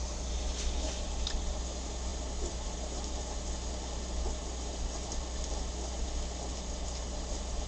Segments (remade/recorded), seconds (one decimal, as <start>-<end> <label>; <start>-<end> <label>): 0.0-2.1 recorded; 2.1-2.7 remade; 2.7-7.7 recorded